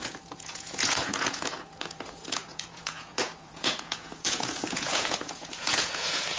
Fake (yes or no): yes